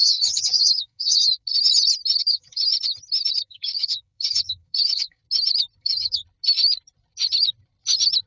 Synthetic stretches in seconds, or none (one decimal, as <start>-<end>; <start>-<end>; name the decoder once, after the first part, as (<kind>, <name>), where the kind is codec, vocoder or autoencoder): 0.0-1.5 (codec, DAC); 2.2-2.7; 3.4-5.2; 5.8-6.2